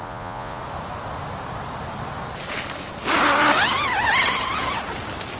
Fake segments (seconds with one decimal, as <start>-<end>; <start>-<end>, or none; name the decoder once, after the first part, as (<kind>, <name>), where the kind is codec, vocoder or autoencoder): 0.0-0.6 (vocoder, Vocos)